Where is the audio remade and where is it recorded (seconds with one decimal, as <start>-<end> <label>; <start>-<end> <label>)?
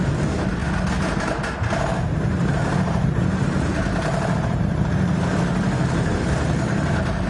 0.0-2.4 recorded; 2.4-6.8 remade; 6.8-7.3 recorded